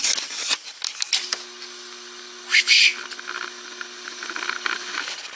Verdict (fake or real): real